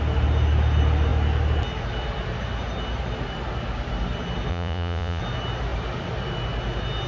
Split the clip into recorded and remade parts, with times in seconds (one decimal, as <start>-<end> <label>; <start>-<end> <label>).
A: 0.0-4.5 recorded; 4.5-5.2 remade; 5.2-7.1 recorded